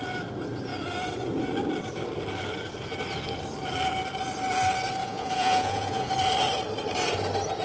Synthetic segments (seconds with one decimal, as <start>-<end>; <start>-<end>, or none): 5.0-6.1